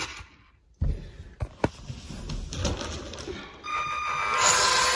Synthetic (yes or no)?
no